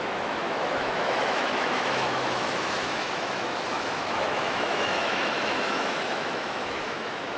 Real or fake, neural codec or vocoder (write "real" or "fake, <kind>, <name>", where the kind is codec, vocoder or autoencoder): fake, autoencoder, DAC-VAE